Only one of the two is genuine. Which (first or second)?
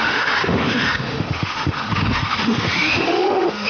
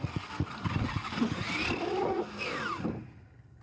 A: second